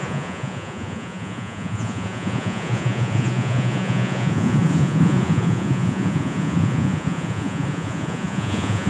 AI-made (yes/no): yes